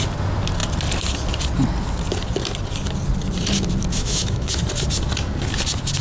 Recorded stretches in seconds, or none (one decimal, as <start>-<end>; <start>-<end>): 0.0-3.9; 4.6-6.0